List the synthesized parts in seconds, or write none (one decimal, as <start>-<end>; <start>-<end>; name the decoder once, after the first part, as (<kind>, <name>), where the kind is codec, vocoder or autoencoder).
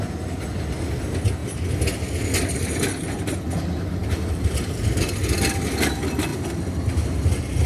none